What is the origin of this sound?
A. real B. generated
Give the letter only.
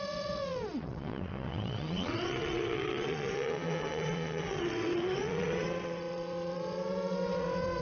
B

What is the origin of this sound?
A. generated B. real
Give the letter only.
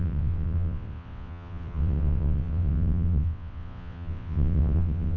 A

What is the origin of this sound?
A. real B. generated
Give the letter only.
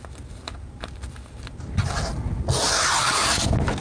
A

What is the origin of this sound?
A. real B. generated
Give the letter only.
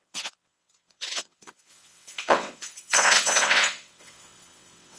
B